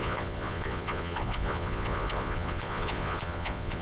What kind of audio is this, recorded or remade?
remade